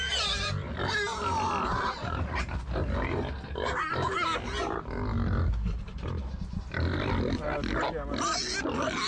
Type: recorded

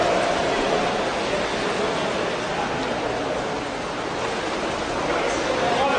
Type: recorded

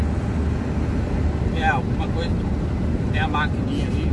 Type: recorded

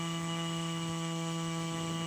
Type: remade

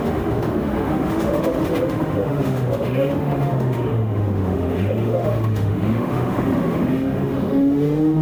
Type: remade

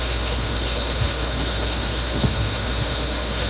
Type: remade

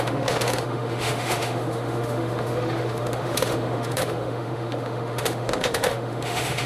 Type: remade